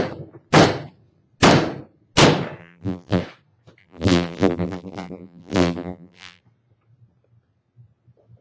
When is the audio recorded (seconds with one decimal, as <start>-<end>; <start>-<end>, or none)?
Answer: 0.0-2.6; 3.2-3.8; 6.4-8.4